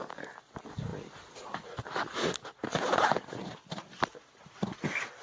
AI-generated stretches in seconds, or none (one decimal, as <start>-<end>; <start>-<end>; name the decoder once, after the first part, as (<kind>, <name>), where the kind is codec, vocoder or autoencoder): none